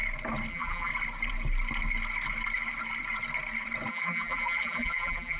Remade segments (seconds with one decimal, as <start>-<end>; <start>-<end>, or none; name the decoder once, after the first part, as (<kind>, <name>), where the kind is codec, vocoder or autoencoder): 0.5-0.9 (vocoder, BigVGAN v2); 3.9-5.4